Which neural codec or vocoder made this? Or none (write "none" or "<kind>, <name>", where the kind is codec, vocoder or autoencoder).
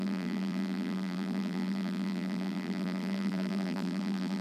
vocoder, BigVGAN v2